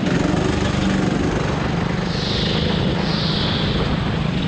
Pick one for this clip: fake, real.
real